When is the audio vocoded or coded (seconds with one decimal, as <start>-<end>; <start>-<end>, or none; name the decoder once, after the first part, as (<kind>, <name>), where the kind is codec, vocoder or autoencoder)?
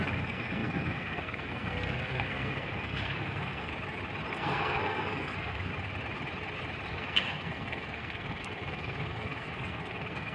0.0-3.7 (codec, SNAC); 4.3-5.7; 6.9-10.3